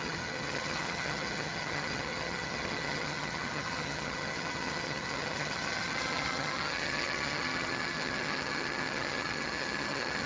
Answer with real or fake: fake